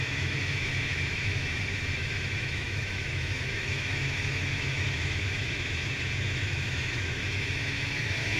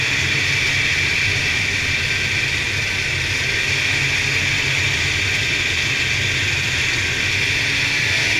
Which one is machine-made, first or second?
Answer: first